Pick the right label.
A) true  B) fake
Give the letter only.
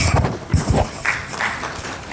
A